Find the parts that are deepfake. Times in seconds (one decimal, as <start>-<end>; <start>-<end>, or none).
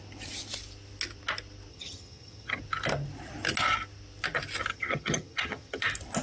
1.7-2.6; 4.7-5.8